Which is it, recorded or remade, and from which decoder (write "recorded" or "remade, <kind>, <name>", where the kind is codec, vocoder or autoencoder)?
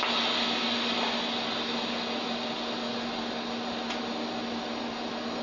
recorded